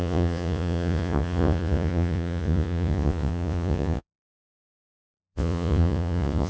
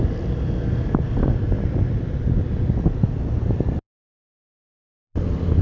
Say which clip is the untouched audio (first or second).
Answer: second